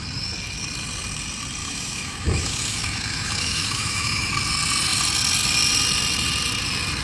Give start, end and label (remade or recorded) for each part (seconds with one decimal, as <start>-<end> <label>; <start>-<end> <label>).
0.0-1.6 recorded; 1.6-4.3 remade; 4.3-7.0 recorded